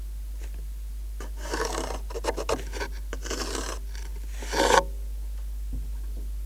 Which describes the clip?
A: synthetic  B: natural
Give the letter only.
B